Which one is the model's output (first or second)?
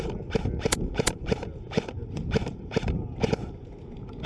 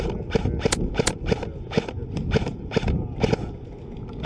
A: first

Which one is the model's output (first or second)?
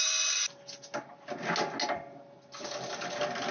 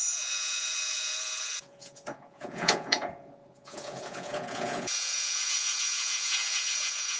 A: second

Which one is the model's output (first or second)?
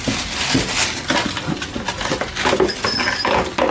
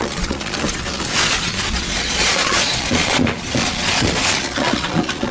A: second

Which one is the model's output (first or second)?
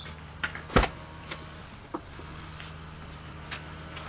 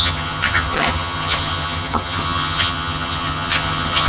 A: second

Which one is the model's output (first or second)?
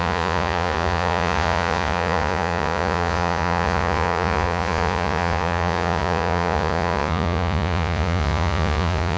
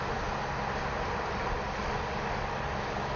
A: first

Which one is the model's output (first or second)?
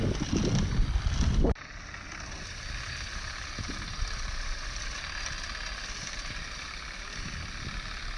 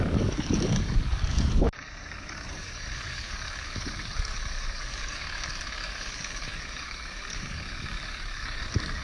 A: second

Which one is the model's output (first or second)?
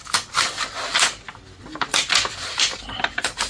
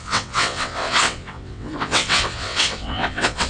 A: second